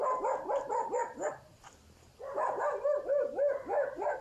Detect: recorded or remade recorded